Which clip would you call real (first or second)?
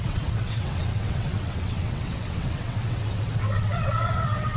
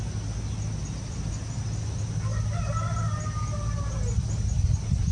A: second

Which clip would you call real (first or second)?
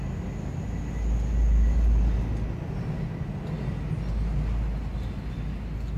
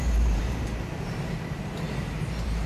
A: first